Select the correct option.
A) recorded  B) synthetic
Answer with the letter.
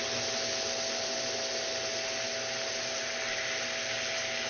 A